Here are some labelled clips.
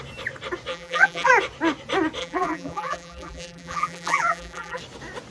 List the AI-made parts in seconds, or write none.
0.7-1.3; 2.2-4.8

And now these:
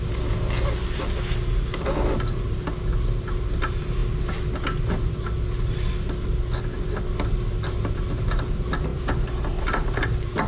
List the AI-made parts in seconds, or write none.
8.9-10.5

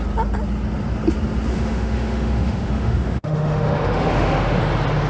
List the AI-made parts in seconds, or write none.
1.5-4.6

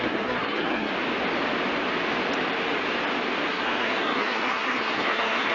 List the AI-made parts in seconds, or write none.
0.0-0.9; 3.5-5.5

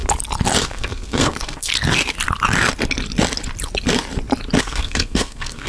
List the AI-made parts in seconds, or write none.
0.6-1.7; 4.6-5.7

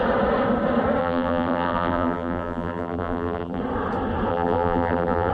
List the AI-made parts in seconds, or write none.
1.0-3.6; 4.3-5.3